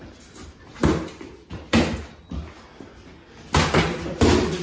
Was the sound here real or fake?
real